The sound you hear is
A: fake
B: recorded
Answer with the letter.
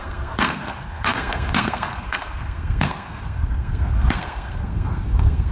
A